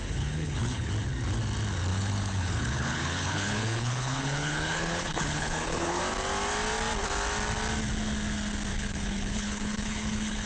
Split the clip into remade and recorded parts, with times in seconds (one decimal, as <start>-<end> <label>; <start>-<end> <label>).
0.0-0.9 remade; 0.9-1.9 recorded; 1.9-6.0 remade; 6.0-8.7 recorded; 8.7-10.5 remade

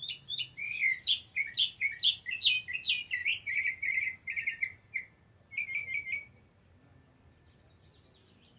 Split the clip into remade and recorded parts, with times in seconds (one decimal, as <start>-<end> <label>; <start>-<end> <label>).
0.0-3.2 recorded; 3.2-5.2 remade; 5.2-8.6 recorded

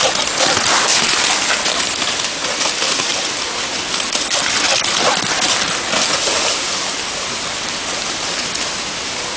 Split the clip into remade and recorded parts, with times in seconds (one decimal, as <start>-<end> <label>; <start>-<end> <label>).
0.0-9.4 recorded

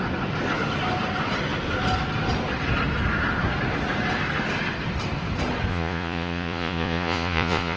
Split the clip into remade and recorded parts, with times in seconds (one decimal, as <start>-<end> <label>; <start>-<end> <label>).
0.0-5.7 recorded; 5.7-7.8 remade

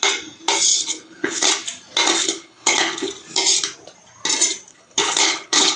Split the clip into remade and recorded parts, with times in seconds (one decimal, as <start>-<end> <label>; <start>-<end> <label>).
0.0-0.7 recorded; 0.7-1.5 remade; 1.5-2.2 recorded; 2.2-3.1 remade; 3.1-4.7 recorded; 4.7-5.8 remade

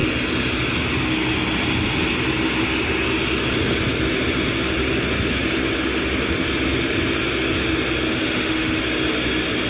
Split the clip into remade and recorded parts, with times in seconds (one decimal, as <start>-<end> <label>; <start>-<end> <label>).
0.0-8.1 recorded; 8.1-8.8 remade; 8.8-9.7 recorded

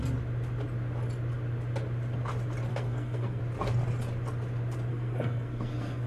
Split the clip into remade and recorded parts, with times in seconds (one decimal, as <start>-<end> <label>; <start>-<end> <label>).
0.0-2.7 recorded; 2.7-3.4 remade; 3.4-4.9 recorded; 4.9-6.1 remade